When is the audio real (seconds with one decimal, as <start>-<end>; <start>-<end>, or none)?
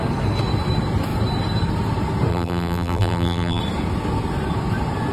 0.0-2.3; 3.6-5.1